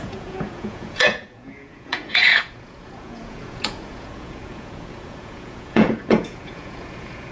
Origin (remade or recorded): remade